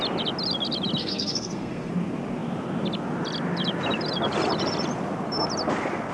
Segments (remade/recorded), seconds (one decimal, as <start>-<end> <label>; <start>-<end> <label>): 0.0-1.0 recorded; 1.0-1.9 remade; 1.9-6.1 recorded

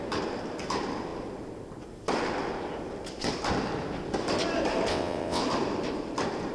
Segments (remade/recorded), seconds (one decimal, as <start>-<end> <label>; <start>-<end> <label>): 0.0-4.9 recorded; 4.9-5.4 remade; 5.4-6.5 recorded

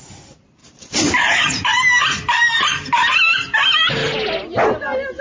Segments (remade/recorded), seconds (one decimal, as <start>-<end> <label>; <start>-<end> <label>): 0.0-0.6 recorded; 0.6-3.6 remade; 3.6-5.2 recorded

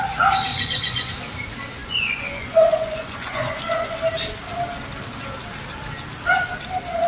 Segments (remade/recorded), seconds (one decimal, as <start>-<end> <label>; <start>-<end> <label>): 0.0-0.5 recorded; 0.5-1.1 remade; 1.1-1.8 recorded; 1.8-4.0 remade; 4.0-7.1 recorded

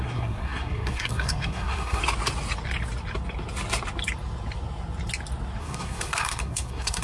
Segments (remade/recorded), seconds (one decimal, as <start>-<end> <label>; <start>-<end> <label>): 0.0-2.0 remade; 2.0-5.6 recorded; 5.6-7.0 remade

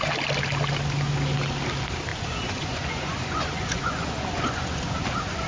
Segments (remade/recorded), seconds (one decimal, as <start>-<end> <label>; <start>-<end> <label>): 0.0-2.1 recorded; 2.1-5.5 remade

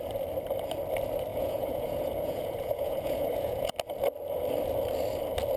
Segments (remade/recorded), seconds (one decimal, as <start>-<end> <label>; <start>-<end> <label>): 0.0-1.3 recorded; 1.3-3.7 remade; 3.7-5.6 recorded